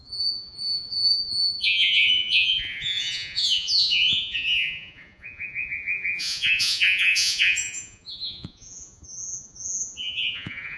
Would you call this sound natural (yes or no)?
no